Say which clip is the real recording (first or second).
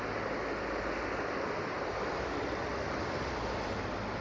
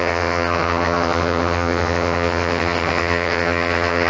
first